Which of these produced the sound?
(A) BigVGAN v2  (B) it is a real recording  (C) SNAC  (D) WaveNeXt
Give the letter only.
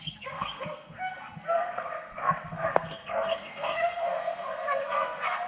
C